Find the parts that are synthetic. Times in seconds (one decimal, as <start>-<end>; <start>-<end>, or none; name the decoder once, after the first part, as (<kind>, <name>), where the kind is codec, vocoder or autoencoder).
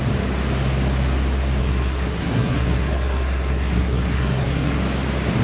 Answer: 1.6-4.8 (codec, SNAC)